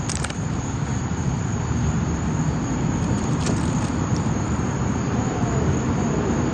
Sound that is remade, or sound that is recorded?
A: remade